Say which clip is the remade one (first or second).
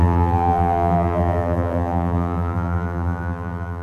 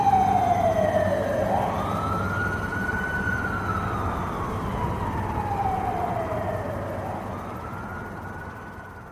first